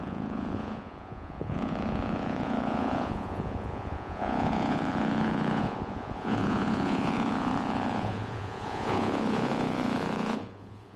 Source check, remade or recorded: remade